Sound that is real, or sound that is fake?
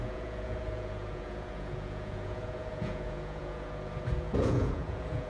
fake